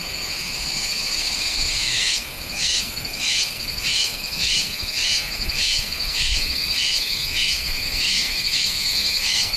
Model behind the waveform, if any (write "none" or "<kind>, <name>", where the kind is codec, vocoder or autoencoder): codec, SNAC